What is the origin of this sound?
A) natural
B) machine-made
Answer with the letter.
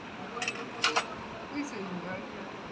A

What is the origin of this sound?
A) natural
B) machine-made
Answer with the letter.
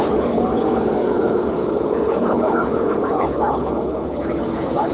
B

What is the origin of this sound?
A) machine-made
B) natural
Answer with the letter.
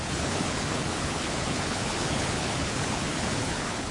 A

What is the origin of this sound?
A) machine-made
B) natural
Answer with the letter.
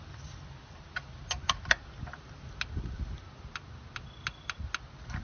B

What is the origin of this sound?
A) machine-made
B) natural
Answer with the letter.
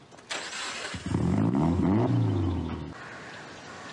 B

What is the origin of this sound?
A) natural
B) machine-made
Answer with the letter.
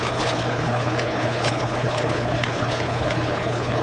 B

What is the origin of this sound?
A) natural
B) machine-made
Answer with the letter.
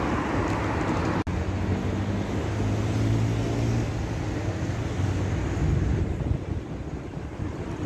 A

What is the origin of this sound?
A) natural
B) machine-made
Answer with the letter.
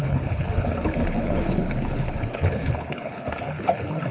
B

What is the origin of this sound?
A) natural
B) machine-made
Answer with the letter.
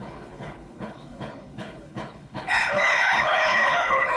B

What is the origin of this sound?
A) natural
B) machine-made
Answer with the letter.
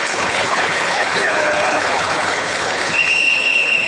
B